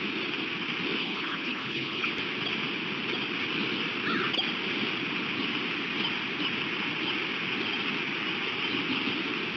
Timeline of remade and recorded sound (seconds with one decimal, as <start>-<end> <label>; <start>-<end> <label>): 0.0-1.0 recorded; 1.0-2.1 remade; 2.1-9.6 recorded